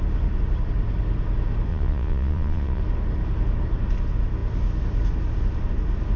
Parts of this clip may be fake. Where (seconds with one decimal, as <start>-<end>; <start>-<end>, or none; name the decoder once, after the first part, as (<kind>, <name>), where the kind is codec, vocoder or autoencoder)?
1.7-2.8 (vocoder, Vocos)